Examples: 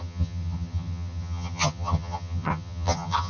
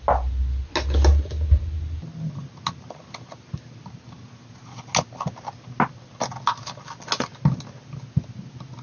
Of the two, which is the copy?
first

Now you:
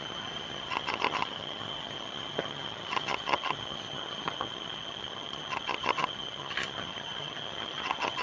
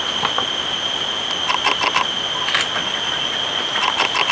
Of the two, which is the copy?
first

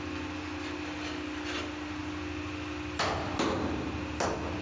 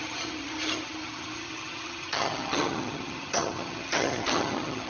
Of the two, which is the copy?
second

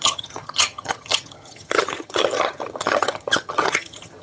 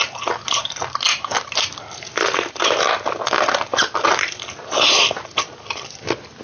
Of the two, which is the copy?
first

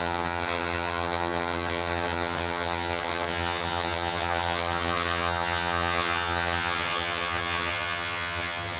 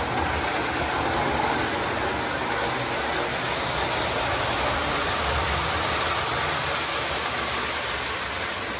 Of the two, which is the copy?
first